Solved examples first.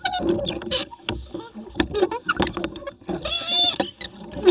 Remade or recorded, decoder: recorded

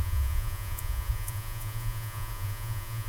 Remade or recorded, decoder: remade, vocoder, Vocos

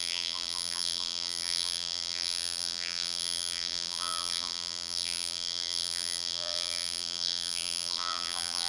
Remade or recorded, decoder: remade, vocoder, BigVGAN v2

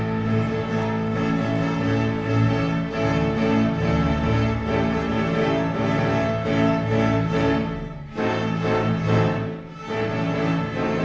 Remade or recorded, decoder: recorded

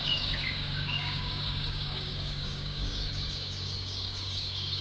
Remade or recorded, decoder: remade, codec, DAC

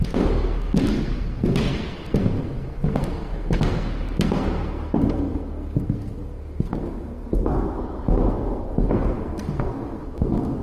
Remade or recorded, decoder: remade, codec, SNAC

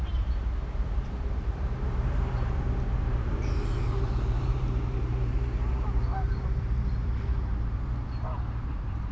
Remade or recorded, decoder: remade, vocoder, BigVGAN v2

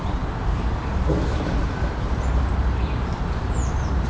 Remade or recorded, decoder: remade, vocoder, BigVGAN v2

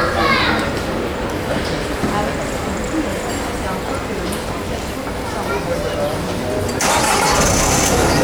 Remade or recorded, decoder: recorded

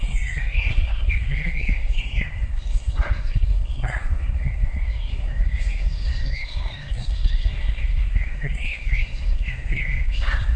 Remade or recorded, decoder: remade, codec, SNAC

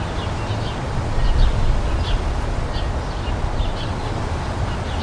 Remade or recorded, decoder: recorded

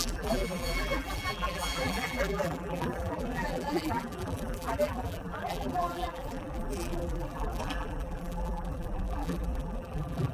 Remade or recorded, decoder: remade, vocoder, BigVGAN v2